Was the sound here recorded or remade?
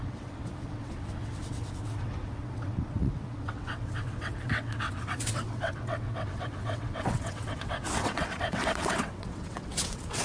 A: remade